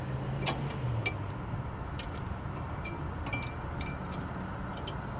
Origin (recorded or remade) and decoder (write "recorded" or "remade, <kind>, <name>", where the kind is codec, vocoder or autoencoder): recorded